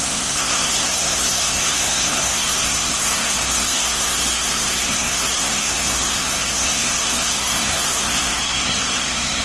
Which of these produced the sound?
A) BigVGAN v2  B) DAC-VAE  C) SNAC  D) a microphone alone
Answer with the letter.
C